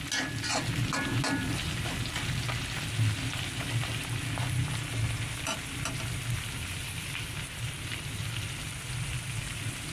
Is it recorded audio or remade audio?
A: recorded